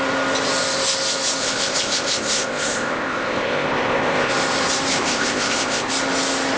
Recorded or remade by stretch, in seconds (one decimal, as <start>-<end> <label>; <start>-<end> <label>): 0.0-1.4 recorded; 1.4-4.3 remade; 4.3-4.9 recorded; 4.9-5.9 remade; 5.9-6.6 recorded